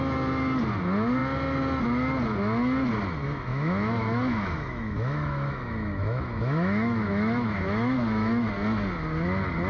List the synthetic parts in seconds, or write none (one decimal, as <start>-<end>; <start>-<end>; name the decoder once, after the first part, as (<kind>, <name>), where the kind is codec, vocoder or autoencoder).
3.5-8.5 (autoencoder, DAC-VAE)